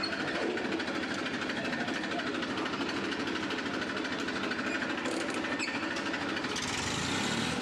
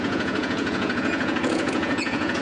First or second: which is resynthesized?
second